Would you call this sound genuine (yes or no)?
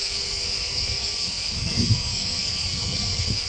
no